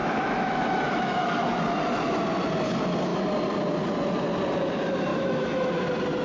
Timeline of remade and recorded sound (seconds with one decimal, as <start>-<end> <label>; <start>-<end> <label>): 0.0-1.6 remade; 1.6-5.1 recorded; 5.1-5.7 remade; 5.7-6.2 recorded